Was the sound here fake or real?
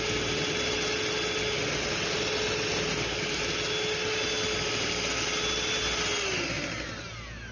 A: real